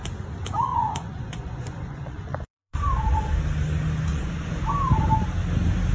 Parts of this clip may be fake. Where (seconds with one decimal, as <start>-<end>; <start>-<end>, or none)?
0.7-3.4; 4.1-4.6